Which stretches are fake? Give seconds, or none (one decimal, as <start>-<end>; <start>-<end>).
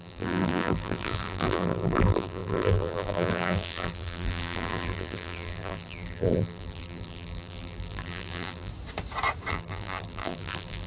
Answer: 0.0-8.7; 9.5-10.9